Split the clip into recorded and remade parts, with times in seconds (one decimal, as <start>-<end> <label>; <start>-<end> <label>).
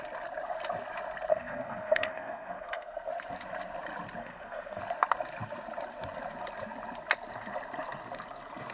0.0-1.3 recorded; 1.3-3.1 remade; 3.1-4.2 recorded; 4.2-4.8 remade; 4.8-8.7 recorded